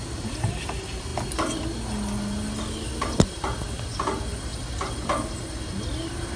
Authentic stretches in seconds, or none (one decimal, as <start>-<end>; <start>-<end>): 0.0-6.4

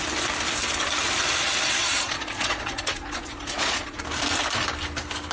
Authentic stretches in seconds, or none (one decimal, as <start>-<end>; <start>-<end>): 0.0-1.8; 4.0-5.3

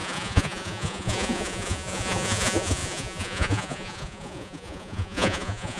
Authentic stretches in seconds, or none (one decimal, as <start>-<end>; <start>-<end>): none